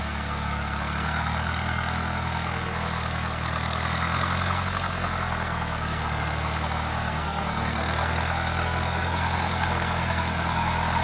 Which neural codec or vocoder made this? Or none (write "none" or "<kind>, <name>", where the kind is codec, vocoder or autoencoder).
codec, SNAC